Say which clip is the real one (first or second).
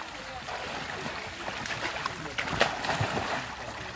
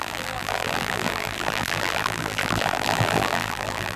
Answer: first